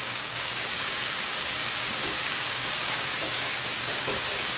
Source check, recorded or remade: remade